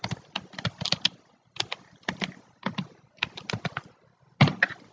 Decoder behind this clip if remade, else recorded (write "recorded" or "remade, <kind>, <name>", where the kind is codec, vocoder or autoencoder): recorded